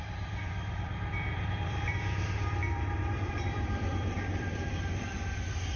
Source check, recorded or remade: remade